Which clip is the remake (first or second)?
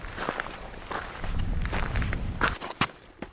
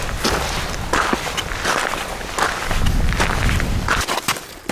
first